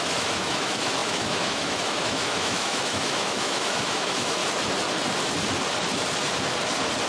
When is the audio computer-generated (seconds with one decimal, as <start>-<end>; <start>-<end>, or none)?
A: 0.0-4.4